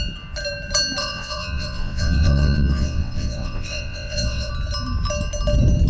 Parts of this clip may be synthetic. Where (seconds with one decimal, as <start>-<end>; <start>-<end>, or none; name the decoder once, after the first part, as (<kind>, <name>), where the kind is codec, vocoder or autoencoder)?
1.0-4.5 (vocoder, WaveNeXt)